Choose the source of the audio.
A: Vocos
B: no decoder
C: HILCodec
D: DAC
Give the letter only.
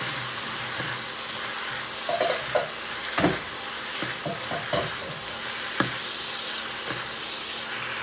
B